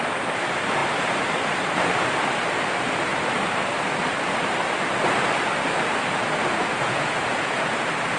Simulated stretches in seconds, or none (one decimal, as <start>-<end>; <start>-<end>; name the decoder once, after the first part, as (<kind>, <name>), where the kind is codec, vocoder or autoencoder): 6.7-7.7 (vocoder, Vocos)